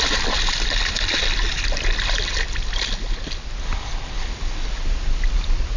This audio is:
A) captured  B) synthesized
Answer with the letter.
A